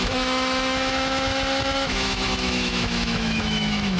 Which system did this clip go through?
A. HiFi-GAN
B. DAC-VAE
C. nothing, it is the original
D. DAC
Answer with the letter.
B